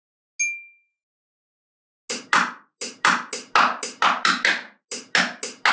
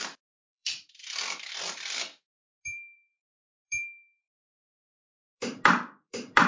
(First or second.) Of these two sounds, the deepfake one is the second